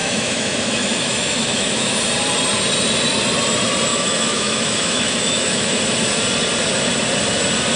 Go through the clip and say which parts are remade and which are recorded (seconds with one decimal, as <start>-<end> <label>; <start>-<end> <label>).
0.0-2.0 remade; 2.0-3.9 recorded; 3.9-5.8 remade; 5.8-7.8 recorded